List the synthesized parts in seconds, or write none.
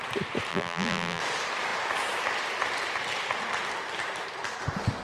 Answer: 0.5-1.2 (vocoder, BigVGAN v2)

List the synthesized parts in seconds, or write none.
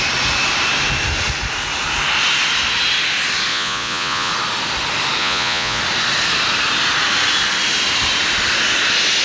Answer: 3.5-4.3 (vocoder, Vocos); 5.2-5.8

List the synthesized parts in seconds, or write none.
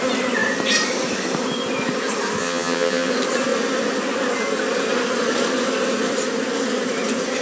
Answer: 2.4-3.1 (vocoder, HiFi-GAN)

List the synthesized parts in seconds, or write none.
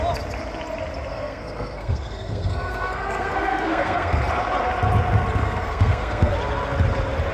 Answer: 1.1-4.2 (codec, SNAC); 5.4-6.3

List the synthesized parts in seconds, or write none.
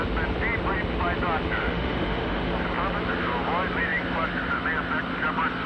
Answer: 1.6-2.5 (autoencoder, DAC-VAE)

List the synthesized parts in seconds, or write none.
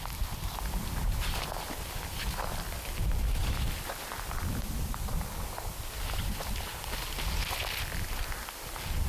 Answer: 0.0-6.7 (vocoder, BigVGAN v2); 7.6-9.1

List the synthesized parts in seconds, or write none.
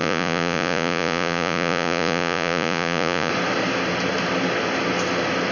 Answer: 0.0-3.3 (vocoder, Vocos)